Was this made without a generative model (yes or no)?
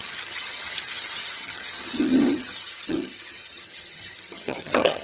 no